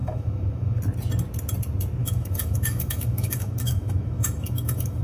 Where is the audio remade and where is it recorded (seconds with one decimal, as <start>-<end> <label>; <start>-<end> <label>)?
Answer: 0.0-0.8 remade; 0.8-2.0 recorded; 2.0-5.0 remade